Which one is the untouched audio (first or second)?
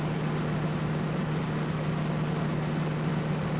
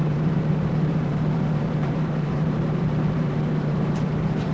first